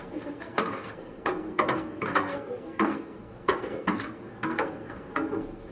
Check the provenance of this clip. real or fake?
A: fake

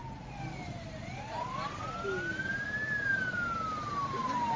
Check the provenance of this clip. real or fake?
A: real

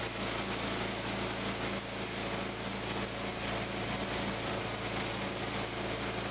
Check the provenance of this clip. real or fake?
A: real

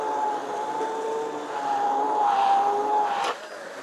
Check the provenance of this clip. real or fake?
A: real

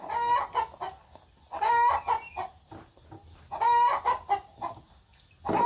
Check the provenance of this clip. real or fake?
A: real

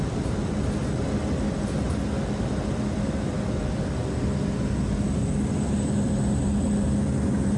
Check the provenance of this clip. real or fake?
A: real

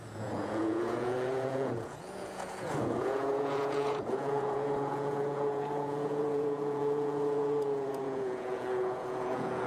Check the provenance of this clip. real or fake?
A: fake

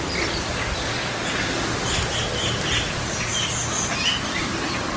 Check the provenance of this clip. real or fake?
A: real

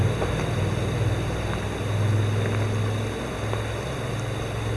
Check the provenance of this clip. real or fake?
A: real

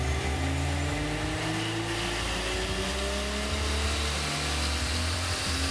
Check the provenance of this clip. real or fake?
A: real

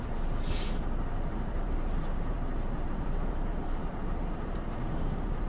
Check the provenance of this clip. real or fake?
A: fake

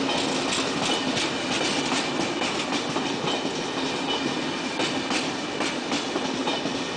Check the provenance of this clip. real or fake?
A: real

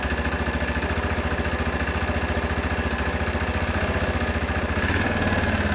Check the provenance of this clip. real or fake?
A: real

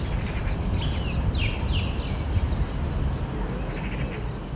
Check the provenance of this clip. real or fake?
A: real